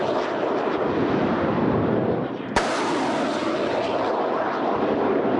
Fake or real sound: real